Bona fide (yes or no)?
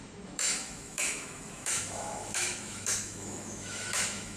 no